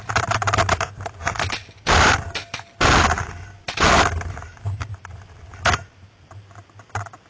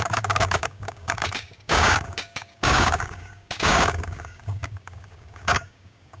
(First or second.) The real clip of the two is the first